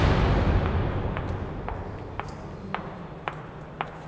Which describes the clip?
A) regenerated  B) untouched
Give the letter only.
B